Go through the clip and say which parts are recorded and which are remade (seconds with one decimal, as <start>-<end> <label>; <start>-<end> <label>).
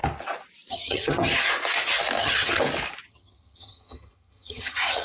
0.0-0.7 recorded; 0.7-1.3 remade; 1.3-2.2 recorded; 2.2-2.6 remade; 2.6-3.1 recorded; 3.1-5.0 remade